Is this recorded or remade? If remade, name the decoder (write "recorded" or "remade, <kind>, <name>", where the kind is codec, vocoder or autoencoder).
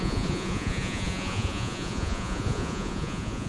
remade, vocoder, Vocos